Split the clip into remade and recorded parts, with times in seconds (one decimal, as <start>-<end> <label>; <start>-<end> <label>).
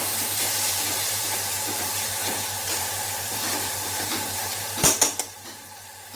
0.0-6.2 remade